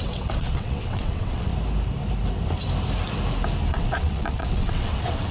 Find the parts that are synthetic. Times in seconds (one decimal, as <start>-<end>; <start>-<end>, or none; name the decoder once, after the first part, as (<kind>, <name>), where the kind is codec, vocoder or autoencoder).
0.0-1.5 (vocoder, WaveNeXt); 3.7-5.3